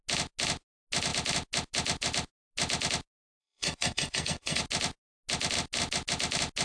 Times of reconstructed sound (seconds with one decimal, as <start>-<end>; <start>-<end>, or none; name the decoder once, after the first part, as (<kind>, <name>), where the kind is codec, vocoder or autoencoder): 3.4-4.6 (codec, SNAC)